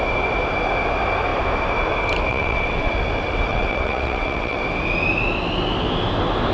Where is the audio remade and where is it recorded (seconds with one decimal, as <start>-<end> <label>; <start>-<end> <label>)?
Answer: 0.0-2.3 recorded; 2.3-2.9 remade; 2.9-3.5 recorded; 3.5-4.6 remade; 4.6-6.5 recorded